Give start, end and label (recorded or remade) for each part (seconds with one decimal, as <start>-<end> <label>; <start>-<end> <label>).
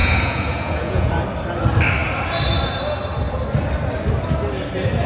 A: 0.0-1.1 remade; 1.1-5.1 recorded